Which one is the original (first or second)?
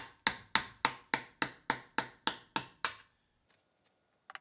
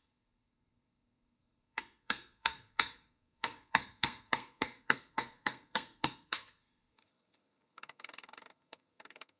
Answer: first